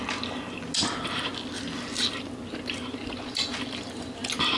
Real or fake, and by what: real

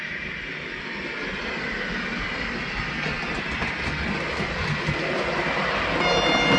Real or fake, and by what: real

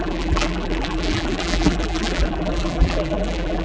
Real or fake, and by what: fake, vocoder, BigVGAN v2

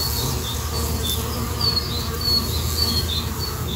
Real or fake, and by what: real